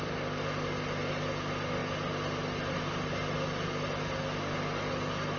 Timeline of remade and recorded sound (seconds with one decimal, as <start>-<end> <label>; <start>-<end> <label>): 0.0-5.4 recorded